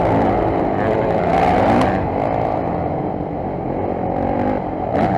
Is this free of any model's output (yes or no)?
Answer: yes